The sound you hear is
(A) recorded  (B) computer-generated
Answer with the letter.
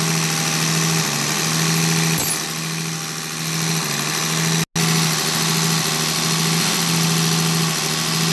A